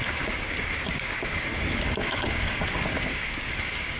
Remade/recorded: remade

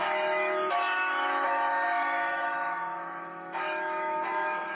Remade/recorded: remade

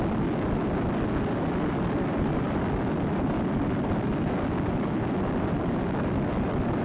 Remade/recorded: recorded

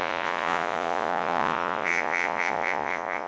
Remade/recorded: remade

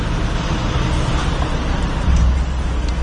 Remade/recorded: recorded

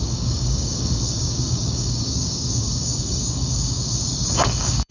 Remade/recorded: remade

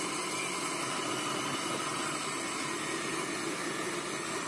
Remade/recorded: recorded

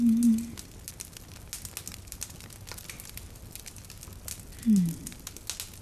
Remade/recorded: recorded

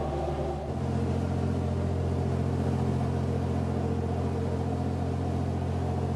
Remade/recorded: recorded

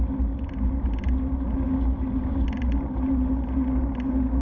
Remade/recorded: recorded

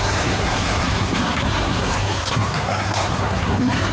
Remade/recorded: remade